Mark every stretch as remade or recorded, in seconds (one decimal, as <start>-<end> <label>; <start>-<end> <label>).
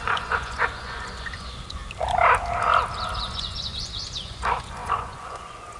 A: 0.0-1.8 remade; 1.8-3.2 recorded; 3.2-5.8 remade